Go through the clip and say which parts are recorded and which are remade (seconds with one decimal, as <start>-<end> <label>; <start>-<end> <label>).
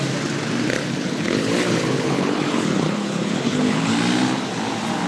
0.0-0.8 recorded; 0.8-3.9 remade; 3.9-5.1 recorded